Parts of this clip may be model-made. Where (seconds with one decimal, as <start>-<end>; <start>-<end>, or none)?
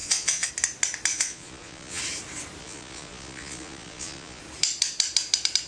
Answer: 0.0-0.5; 1.1-2.0; 2.6-4.4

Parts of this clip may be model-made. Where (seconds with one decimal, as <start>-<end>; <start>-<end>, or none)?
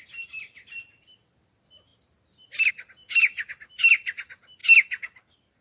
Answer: none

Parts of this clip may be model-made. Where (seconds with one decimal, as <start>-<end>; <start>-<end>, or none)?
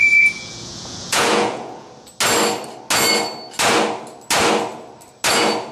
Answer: 0.0-2.1